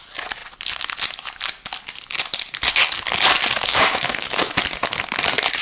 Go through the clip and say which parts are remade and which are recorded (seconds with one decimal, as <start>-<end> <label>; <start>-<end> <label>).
0.0-3.7 recorded; 3.7-4.5 remade; 4.5-5.6 recorded